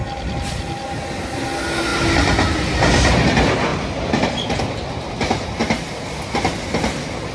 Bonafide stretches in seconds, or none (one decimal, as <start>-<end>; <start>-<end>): 0.0-3.7; 4.6-7.3